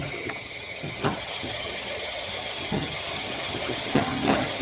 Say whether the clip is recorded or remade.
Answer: remade